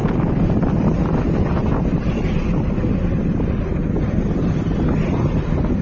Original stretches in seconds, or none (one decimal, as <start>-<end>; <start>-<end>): 0.0-5.8